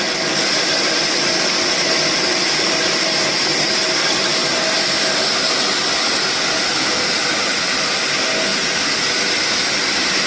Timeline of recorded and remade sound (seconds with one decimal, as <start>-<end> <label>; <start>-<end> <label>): 0.0-10.3 recorded

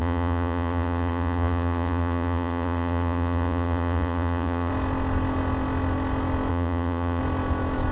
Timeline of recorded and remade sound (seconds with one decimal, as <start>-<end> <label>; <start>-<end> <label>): 0.0-4.7 remade; 4.7-6.5 recorded; 6.5-7.2 remade; 7.2-7.9 recorded

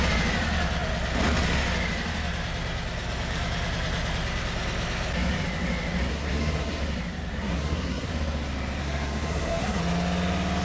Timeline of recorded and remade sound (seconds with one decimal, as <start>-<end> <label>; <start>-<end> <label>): 0.0-6.1 recorded; 6.1-6.8 remade; 6.8-7.3 recorded; 7.3-8.1 remade; 8.1-8.8 recorded; 8.8-9.8 remade; 9.8-10.6 recorded

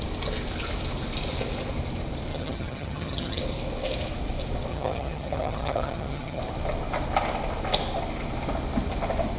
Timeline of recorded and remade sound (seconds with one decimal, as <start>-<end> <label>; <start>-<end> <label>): 0.0-2.3 recorded; 2.3-3.4 remade; 3.4-4.7 recorded; 4.7-6.4 remade; 6.4-9.4 recorded

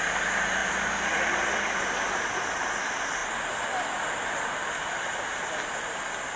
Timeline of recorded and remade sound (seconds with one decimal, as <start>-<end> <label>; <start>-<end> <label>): 0.0-0.6 recorded; 0.6-1.8 remade; 1.8-3.2 recorded; 3.2-5.7 remade; 5.7-6.4 recorded

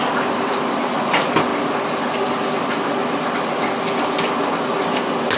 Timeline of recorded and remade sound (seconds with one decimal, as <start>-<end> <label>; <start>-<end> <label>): 0.0-5.4 recorded

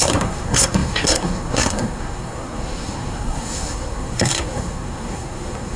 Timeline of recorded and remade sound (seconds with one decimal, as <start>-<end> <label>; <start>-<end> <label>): 0.0-5.8 remade

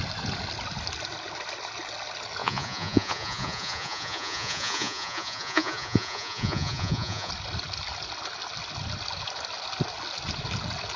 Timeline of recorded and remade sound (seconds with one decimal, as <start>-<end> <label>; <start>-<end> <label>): 0.0-2.4 recorded; 2.4-7.3 remade; 7.3-11.0 recorded